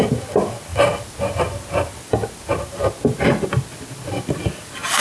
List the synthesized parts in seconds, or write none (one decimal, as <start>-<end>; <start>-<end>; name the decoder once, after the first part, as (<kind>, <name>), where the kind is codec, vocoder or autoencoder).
none